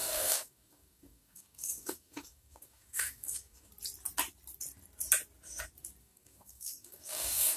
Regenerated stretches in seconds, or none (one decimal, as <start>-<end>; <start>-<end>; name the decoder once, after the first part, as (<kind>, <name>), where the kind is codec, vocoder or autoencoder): 0.0-3.7 (codec, DAC); 6.0-7.6